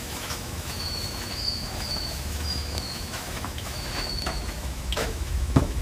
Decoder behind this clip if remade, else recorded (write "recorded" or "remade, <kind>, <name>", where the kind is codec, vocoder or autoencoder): remade, autoencoder, DAC-VAE